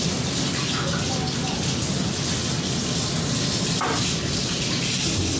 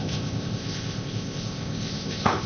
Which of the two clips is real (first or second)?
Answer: first